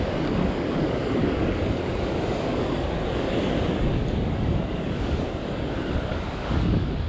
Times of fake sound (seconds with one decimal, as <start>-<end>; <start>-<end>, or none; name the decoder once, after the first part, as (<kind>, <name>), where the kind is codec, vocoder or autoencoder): 0.0-7.1 (codec, DAC)